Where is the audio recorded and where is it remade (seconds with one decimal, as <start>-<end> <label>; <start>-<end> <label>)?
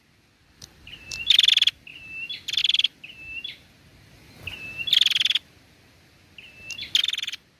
0.0-0.4 recorded; 0.4-1.5 remade; 1.5-7.6 recorded